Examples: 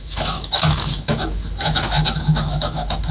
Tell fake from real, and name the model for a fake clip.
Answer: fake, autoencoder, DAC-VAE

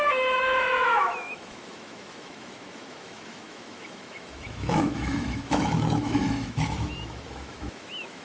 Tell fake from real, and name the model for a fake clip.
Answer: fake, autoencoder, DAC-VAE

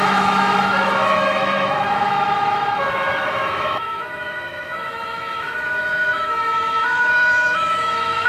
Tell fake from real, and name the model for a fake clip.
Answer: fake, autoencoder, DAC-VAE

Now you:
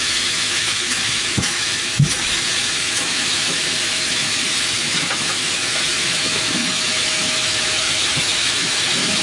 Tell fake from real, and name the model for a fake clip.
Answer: fake, autoencoder, DAC-VAE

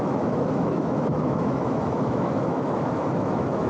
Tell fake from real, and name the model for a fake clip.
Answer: fake, autoencoder, DAC-VAE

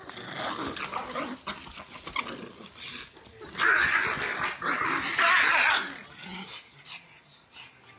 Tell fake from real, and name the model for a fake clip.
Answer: real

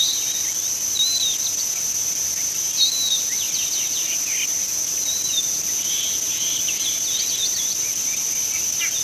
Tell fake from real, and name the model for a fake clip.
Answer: real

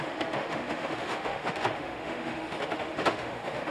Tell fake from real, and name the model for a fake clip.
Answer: fake, autoencoder, DAC-VAE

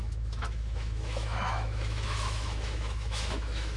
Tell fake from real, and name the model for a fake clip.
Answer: fake, autoencoder, DAC-VAE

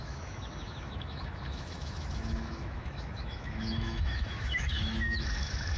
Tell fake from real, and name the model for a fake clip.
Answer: fake, autoencoder, DAC-VAE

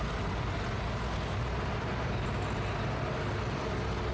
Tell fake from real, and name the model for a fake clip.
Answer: real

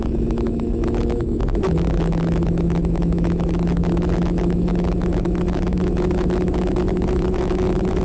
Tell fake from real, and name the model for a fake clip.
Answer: fake, autoencoder, DAC-VAE